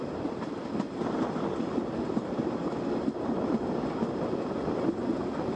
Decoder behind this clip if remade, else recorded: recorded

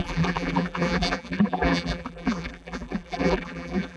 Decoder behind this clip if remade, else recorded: remade, vocoder, BigVGAN v2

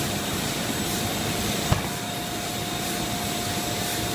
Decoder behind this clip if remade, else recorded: recorded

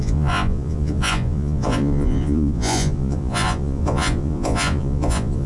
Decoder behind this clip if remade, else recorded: remade, vocoder, Vocos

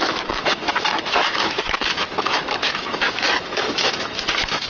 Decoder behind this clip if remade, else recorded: remade, autoencoder, DAC-VAE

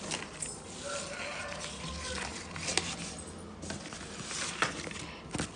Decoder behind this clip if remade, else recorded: recorded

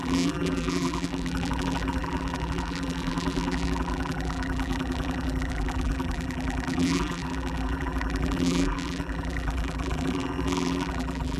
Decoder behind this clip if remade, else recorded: remade, vocoder, BigVGAN v2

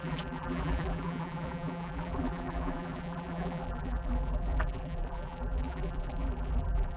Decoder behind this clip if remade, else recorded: remade, vocoder, BigVGAN v2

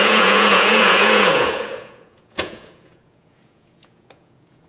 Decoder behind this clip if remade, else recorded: remade, vocoder, Vocos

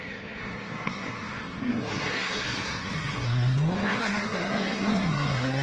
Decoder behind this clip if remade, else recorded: remade, codec, SNAC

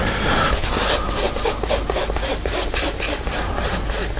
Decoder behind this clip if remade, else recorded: recorded